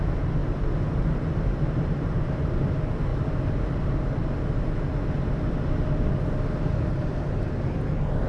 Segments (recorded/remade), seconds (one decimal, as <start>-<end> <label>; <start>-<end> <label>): 0.0-0.4 recorded; 0.4-1.3 remade; 1.3-8.3 recorded